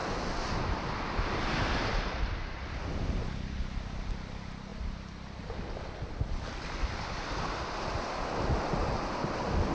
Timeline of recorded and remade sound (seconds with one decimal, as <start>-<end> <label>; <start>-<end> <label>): 0.0-9.7 recorded